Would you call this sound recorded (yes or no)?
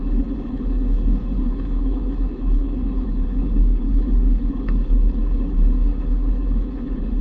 no